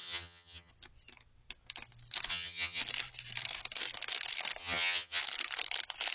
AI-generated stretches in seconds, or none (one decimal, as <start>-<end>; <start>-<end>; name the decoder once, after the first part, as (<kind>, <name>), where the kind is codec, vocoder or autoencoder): 0.0-0.7 (vocoder, HiFi-GAN); 2.3-2.8; 4.6-5.2